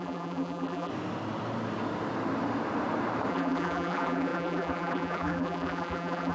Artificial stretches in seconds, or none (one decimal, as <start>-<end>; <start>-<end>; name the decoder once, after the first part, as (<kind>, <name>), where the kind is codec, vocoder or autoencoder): 0.0-0.9 (vocoder, BigVGAN v2); 3.3-6.3